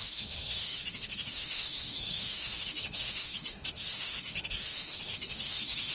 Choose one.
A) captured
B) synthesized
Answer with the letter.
B